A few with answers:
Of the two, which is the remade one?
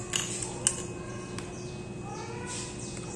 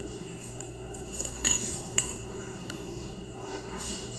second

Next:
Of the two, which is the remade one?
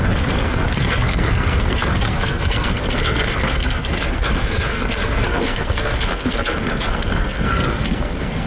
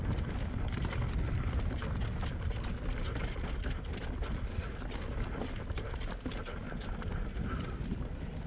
first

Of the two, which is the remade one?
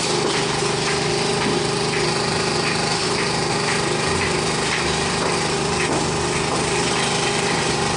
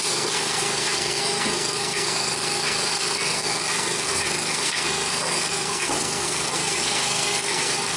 second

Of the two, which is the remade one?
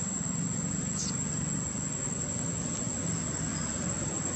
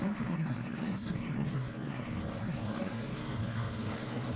second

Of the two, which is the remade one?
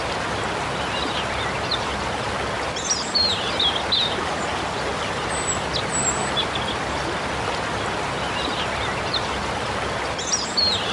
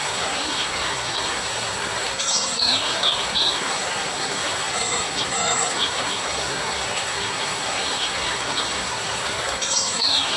second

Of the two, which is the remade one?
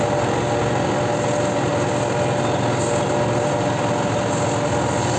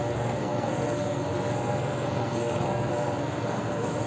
second